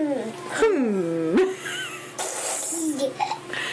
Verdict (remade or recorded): recorded